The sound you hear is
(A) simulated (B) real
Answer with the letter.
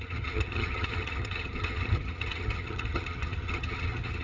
A